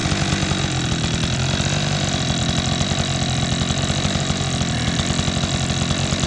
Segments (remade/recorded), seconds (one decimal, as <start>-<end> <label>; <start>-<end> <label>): 0.0-6.3 recorded

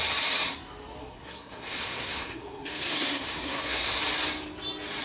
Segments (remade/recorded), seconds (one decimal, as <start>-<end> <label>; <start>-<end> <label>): 0.0-1.0 recorded; 1.0-4.0 remade; 4.0-5.0 recorded

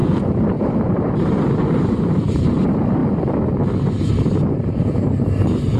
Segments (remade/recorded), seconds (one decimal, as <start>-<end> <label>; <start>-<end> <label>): 0.0-2.6 remade; 2.6-5.8 recorded

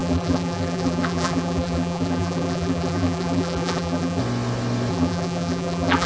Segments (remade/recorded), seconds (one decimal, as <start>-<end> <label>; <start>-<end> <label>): 0.0-4.2 remade; 4.2-4.9 recorded; 4.9-6.1 remade

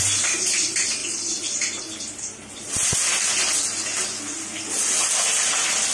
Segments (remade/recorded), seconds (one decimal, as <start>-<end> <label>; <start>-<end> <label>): 0.0-5.9 recorded

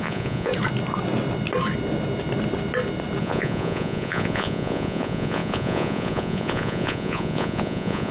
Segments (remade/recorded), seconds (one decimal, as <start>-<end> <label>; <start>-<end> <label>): 0.0-0.5 remade; 0.5-3.2 recorded; 3.2-8.1 remade